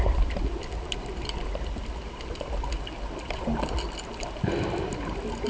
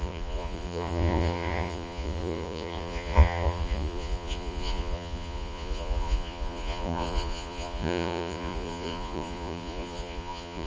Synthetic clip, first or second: second